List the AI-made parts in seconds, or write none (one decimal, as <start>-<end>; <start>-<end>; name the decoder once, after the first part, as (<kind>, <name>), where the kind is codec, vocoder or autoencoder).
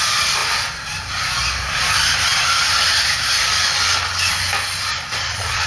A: 4.9-5.7 (vocoder, Vocos)